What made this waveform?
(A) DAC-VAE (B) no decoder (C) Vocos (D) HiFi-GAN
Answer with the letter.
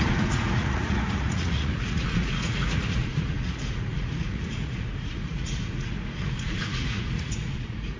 C